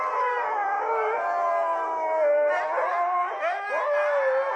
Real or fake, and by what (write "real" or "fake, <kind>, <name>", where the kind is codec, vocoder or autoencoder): real